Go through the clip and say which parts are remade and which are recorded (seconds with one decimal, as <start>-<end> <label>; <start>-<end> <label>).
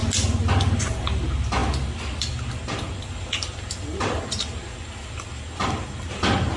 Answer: 0.0-6.6 recorded